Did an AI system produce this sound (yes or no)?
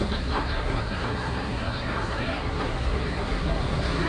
yes